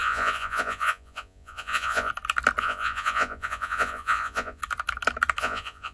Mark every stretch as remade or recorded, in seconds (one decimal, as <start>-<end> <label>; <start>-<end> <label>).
0.0-2.1 remade; 2.1-2.6 recorded; 2.6-4.6 remade; 4.6-5.4 recorded; 5.4-5.9 remade